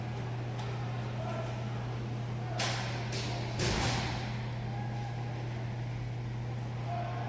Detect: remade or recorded recorded